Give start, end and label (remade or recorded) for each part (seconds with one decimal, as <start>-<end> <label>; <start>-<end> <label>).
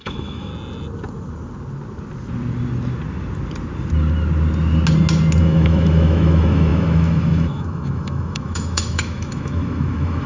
0.0-0.5 remade; 0.5-5.4 recorded; 5.4-10.3 remade